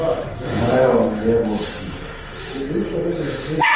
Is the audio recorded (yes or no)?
no